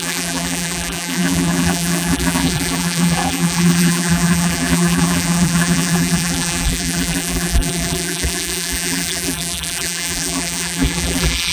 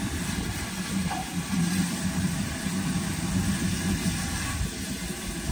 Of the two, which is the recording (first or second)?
second